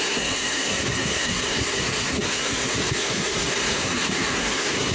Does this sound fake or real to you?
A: fake